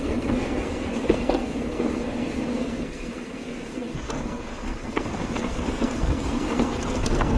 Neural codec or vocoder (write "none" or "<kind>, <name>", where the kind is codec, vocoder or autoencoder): codec, SNAC